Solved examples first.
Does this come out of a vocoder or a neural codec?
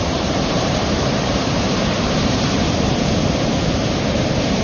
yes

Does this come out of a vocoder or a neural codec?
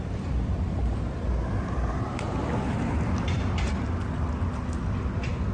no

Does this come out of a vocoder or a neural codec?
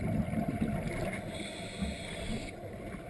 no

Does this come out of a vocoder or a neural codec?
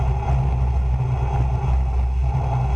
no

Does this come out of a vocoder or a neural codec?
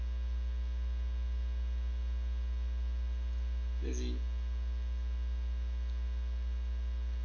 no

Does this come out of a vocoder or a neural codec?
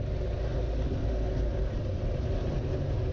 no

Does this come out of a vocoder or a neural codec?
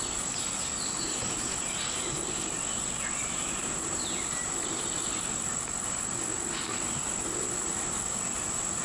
no